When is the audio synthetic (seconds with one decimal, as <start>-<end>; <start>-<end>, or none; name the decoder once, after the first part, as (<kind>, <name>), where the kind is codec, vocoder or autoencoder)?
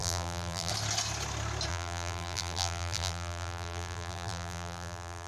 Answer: 0.0-0.7 (vocoder, BigVGAN v2); 1.7-5.3